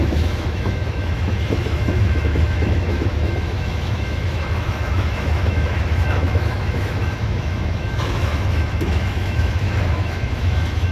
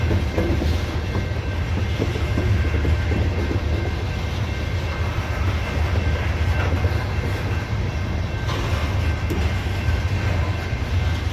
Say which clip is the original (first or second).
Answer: second